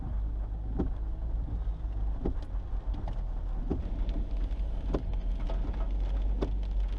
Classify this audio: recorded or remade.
recorded